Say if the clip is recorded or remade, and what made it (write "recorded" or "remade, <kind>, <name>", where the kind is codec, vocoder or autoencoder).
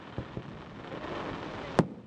recorded